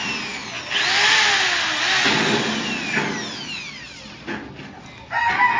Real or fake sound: real